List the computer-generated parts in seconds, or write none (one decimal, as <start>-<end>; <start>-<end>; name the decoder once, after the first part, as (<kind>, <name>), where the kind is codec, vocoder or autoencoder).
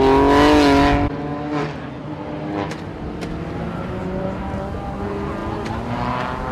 4.0-4.6 (vocoder, BigVGAN v2)